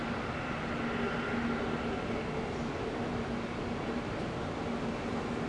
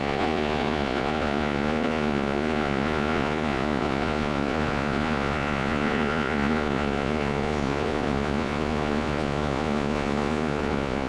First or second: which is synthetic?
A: second